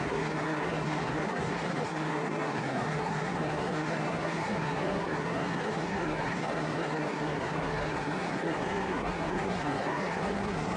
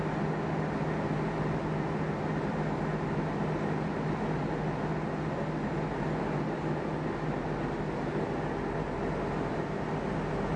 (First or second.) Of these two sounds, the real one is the second